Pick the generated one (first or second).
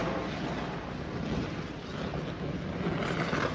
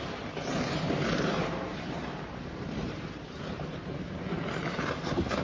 second